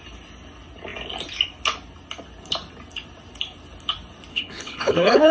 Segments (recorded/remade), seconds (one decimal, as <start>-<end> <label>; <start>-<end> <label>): 0.0-4.3 recorded; 4.3-5.3 remade